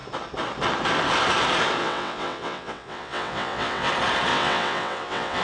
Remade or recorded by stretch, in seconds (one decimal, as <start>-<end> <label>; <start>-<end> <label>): 0.0-1.8 recorded; 1.8-3.9 remade; 3.9-4.3 recorded; 4.3-5.4 remade